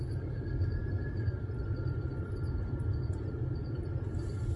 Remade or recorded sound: recorded